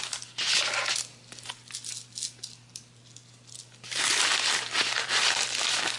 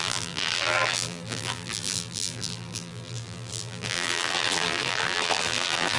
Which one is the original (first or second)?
first